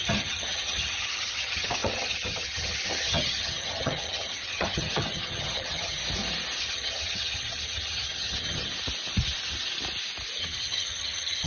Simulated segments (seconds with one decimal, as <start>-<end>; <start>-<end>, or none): 0.0-6.0; 6.6-8.7; 10.4-11.5